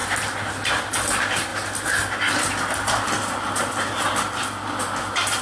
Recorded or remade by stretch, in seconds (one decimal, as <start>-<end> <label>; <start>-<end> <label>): 0.0-5.4 recorded